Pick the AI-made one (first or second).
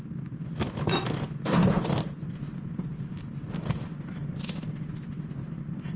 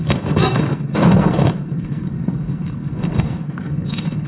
second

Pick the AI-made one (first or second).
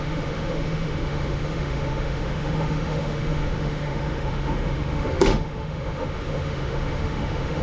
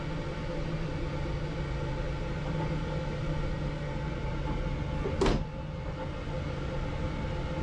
first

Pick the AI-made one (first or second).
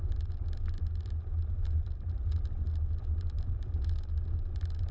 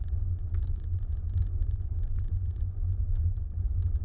second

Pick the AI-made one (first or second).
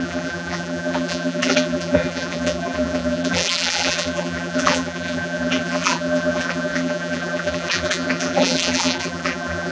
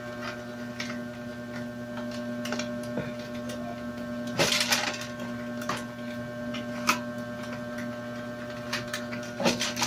first